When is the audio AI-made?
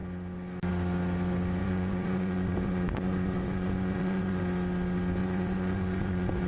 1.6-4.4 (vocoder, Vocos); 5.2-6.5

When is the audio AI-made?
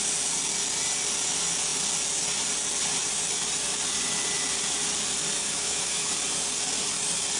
5.4-6.1 (autoencoder, DAC-VAE)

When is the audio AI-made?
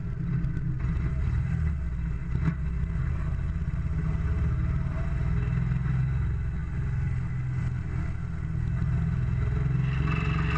none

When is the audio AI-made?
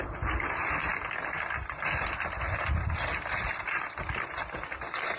none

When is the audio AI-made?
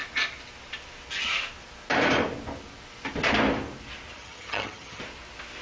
4.2-5.0 (vocoder, HiFi-GAN)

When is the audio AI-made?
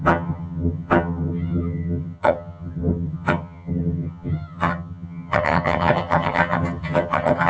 0.0-7.5 (vocoder, HiFi-GAN)